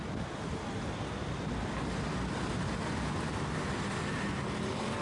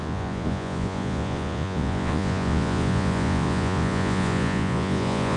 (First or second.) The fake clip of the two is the second